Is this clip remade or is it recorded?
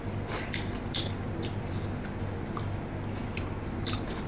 recorded